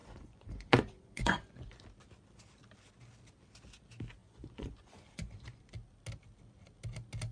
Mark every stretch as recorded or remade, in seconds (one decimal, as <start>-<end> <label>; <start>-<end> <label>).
0.0-1.7 remade; 1.7-4.2 recorded; 4.2-5.6 remade; 5.6-7.3 recorded